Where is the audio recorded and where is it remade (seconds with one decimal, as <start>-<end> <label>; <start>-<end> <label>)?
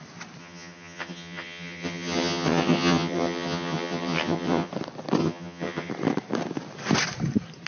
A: 0.0-0.4 recorded; 0.4-4.7 remade; 4.7-5.2 recorded; 5.2-5.9 remade; 5.9-7.7 recorded